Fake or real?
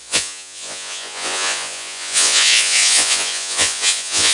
fake